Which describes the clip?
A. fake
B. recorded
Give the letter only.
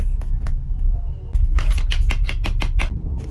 B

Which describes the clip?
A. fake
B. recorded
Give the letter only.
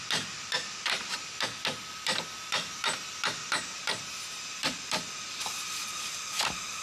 A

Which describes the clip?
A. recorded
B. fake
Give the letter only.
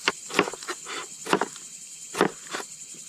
A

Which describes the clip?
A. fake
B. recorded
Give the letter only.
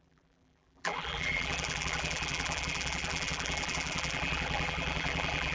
A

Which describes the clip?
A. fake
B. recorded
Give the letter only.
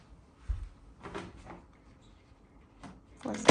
A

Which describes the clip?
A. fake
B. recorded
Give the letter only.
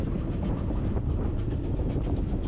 A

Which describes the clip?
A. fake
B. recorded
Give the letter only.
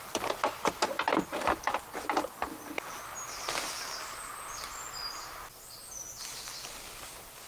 B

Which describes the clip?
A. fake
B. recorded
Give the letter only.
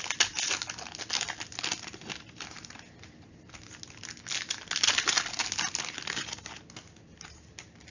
B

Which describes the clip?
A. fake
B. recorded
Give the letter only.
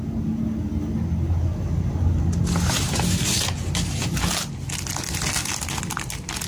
B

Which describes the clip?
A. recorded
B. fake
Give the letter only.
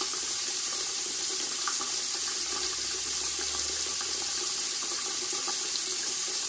B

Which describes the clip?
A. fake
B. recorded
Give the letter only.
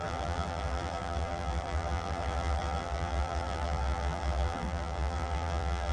A